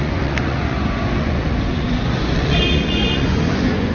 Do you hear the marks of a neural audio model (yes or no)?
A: yes